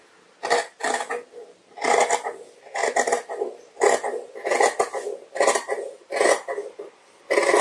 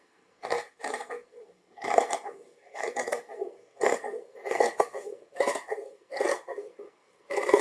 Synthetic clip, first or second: second